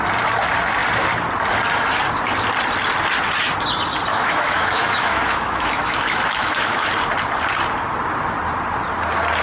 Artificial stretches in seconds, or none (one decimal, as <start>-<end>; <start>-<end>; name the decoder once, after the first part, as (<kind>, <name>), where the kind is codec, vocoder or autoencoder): 4.1-6.9 (autoencoder, DAC-VAE)